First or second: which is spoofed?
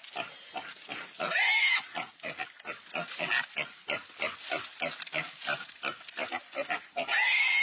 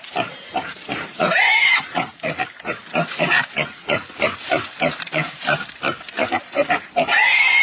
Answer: second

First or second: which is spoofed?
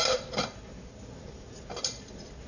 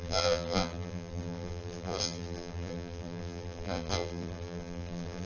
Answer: second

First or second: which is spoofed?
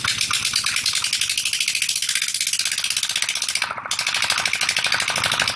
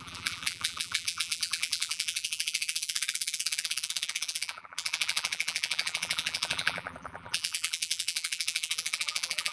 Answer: second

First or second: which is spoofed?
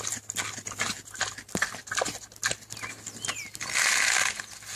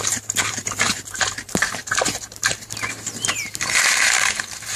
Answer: second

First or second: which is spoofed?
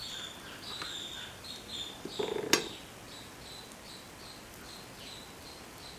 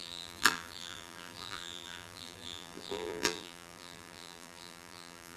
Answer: second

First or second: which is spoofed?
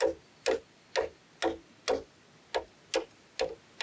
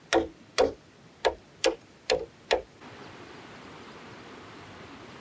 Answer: second